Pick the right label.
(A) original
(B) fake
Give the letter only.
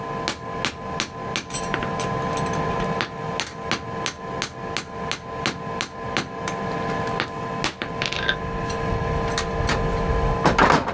A